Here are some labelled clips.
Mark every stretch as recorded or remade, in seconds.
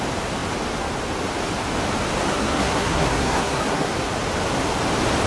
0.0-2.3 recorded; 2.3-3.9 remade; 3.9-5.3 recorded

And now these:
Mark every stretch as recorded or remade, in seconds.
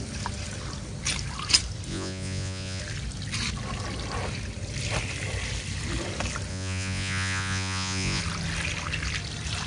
0.0-1.9 recorded; 1.9-2.8 remade; 2.8-6.5 recorded; 6.5-8.2 remade; 8.2-9.7 recorded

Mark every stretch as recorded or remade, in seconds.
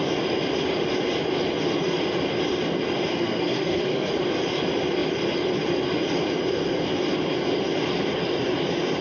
0.0-3.1 recorded; 3.1-4.1 remade; 4.1-6.5 recorded; 6.5-7.0 remade; 7.0-9.0 recorded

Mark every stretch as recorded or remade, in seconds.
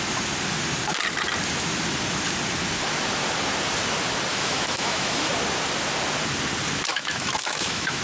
0.0-4.3 recorded; 4.3-5.3 remade; 5.3-6.9 recorded; 6.9-8.0 remade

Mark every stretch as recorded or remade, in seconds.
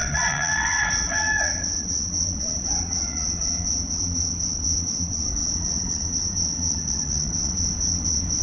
0.0-8.4 remade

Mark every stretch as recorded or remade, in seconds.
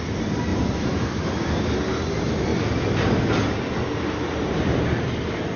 0.0-5.6 recorded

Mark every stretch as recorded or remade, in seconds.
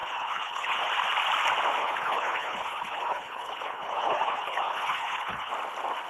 0.0-0.9 remade; 0.9-1.8 recorded; 1.8-5.5 remade; 5.5-6.1 recorded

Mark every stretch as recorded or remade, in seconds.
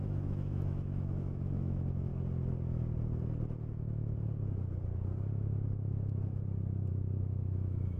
0.0-2.1 remade; 2.1-6.9 recorded; 6.9-8.0 remade